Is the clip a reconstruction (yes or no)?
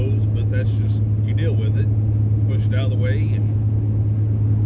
no